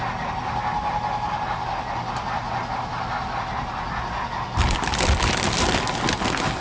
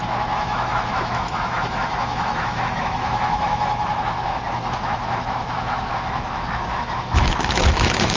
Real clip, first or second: first